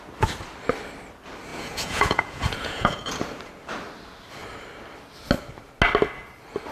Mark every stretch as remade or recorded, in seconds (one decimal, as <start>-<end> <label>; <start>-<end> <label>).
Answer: 0.0-1.5 recorded; 1.5-3.1 remade; 3.1-6.7 recorded